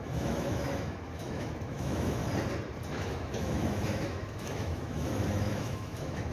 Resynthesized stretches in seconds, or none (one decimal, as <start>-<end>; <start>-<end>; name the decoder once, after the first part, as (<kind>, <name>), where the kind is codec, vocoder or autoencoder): 0.0-2.2 (autoencoder, DAC-VAE); 2.9-6.3